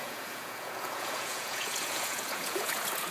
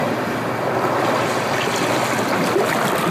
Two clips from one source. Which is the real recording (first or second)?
second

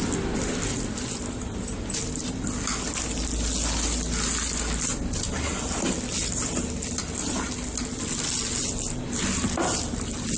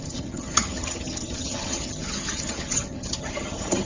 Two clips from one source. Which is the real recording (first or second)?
first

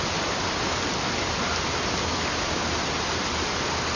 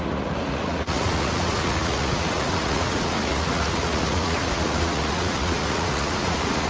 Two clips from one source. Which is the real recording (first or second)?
first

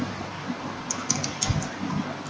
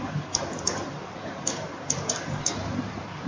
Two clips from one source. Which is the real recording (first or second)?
first